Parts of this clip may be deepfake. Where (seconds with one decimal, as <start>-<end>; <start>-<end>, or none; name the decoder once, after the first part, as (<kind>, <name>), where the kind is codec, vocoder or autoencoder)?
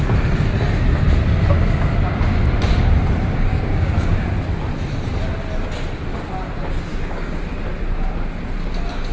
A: 3.5-4.3 (codec, DAC); 6.9-7.4